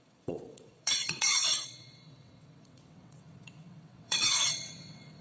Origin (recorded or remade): remade